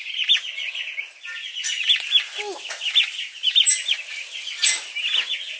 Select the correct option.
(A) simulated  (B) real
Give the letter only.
B